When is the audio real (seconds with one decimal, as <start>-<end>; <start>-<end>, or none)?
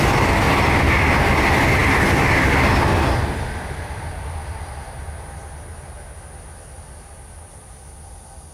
0.0-3.2; 4.6-8.5